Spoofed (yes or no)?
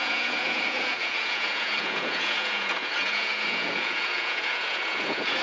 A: yes